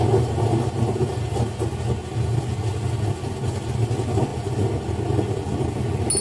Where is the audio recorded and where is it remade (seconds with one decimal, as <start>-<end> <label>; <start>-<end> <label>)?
0.0-6.2 recorded